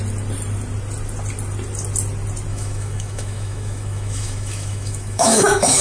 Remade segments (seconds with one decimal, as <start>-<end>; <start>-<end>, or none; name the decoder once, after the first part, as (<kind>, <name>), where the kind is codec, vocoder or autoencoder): 2.5-5.8 (autoencoder, DAC-VAE)